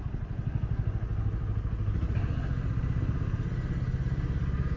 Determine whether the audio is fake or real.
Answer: real